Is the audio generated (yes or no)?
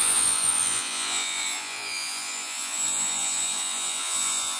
yes